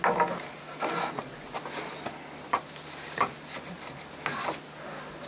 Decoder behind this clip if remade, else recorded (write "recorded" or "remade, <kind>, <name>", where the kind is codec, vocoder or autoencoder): recorded